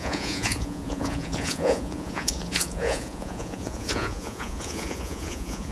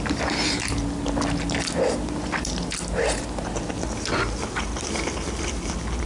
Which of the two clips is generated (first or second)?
first